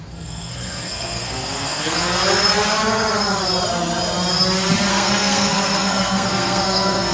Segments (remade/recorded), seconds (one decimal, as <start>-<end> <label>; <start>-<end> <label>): 0.0-2.2 remade; 2.2-4.9 recorded; 4.9-7.1 remade